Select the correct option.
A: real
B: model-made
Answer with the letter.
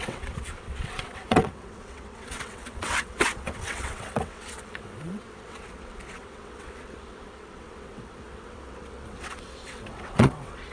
B